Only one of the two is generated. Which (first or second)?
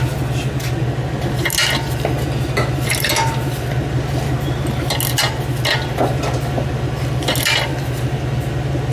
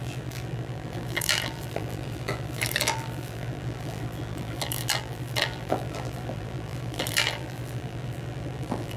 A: second